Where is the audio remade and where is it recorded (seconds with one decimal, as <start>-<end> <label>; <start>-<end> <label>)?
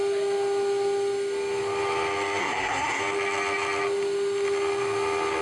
0.0-2.4 recorded; 2.4-3.0 remade; 3.0-5.4 recorded